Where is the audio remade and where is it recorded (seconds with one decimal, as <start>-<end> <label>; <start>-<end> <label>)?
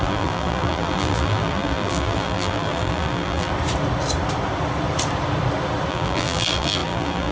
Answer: 0.0-3.5 remade; 3.5-5.9 recorded; 5.9-7.3 remade